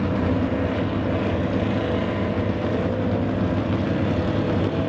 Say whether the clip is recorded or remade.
recorded